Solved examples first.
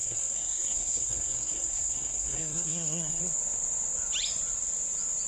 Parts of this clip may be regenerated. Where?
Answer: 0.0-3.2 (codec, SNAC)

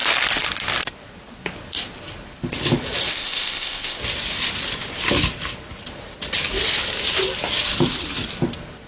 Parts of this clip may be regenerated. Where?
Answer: 3.1-4.0 (codec, ZipCodec)

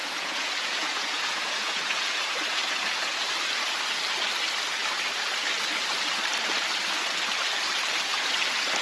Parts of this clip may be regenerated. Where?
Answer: 0.0-3.2 (vocoder, Vocos)

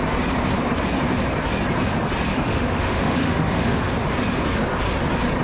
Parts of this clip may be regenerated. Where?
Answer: 2.3-3.9 (autoencoder, DAC-VAE)

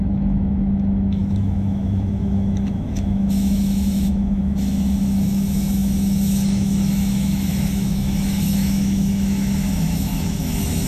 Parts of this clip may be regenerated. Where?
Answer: 0.0-10.9 (autoencoder, DAC-VAE)